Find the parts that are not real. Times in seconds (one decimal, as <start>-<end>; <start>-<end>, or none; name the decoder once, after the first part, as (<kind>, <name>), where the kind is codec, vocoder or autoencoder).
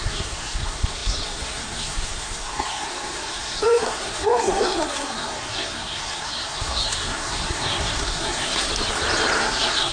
0.0-8.7 (codec, SNAC); 9.4-9.9